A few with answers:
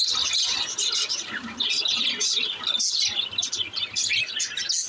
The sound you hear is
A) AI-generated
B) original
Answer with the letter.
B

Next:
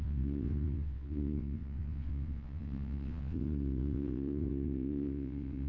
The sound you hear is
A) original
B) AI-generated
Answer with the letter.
B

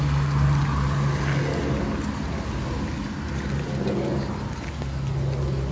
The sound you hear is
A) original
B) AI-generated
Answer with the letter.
A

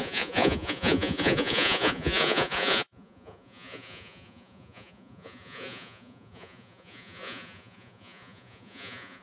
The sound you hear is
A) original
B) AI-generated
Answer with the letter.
B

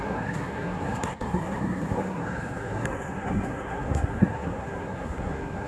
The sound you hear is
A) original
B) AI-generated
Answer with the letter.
B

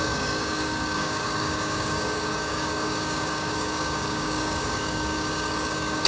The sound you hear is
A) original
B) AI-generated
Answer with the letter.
B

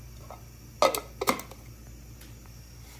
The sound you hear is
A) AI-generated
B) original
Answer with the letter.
B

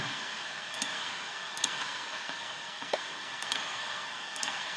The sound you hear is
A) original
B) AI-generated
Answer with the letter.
B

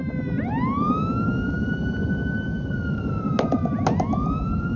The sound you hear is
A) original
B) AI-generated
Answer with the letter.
A